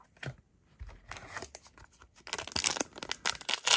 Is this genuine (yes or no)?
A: yes